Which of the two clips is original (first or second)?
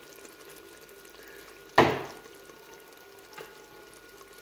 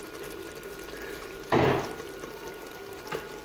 first